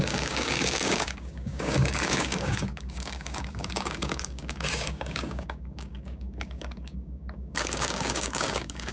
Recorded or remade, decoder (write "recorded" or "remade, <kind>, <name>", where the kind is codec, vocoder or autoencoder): remade, codec, DAC